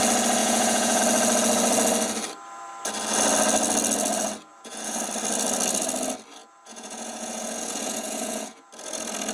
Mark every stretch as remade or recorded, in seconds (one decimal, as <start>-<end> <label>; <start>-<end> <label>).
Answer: 0.0-0.4 recorded; 0.4-1.0 remade; 1.0-4.5 recorded; 4.5-5.0 remade; 5.0-6.4 recorded; 6.4-8.7 remade; 8.7-9.3 recorded